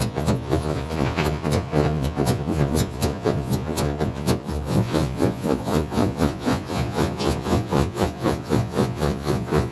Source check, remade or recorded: remade